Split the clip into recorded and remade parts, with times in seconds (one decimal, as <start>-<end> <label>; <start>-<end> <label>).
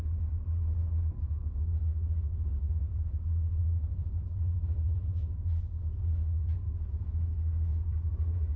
0.0-3.6 recorded; 3.6-5.6 remade; 5.6-6.5 recorded; 6.5-7.0 remade; 7.0-7.7 recorded; 7.7-8.6 remade